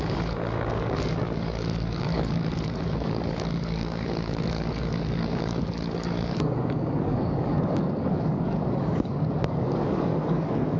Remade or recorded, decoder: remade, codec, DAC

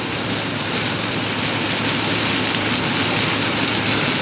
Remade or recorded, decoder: recorded